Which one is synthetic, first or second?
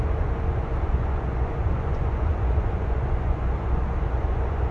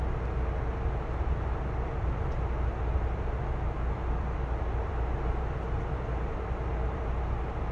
first